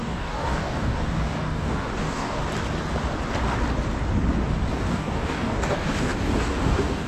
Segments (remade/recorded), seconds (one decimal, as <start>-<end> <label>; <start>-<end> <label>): 0.0-2.4 remade; 2.4-4.7 recorded; 4.7-7.1 remade

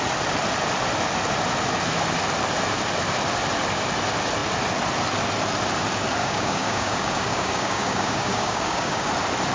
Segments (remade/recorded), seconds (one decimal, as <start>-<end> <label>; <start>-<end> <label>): 0.0-6.2 recorded; 6.2-9.1 remade; 9.1-9.5 recorded

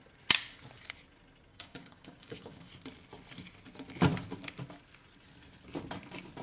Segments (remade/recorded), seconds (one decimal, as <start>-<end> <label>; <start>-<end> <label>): 0.0-1.5 recorded; 1.5-2.7 remade; 2.7-6.4 recorded

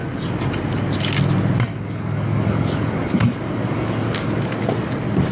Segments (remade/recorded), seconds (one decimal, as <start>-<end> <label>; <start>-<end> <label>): 0.0-1.7 recorded; 1.7-4.4 remade; 4.4-5.3 recorded

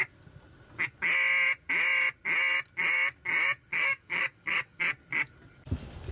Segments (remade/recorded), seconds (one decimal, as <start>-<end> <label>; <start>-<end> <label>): 0.0-3.7 recorded; 3.7-4.8 remade; 4.8-6.1 recorded

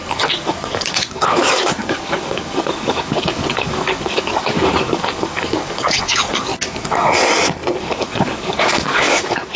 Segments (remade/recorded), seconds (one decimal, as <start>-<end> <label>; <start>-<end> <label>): 0.0-6.5 remade; 6.5-7.8 recorded; 7.8-9.6 remade